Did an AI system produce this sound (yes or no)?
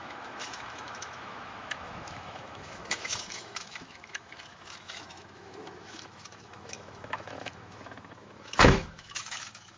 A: yes